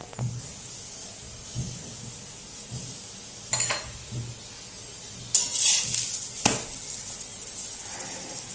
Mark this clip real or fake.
real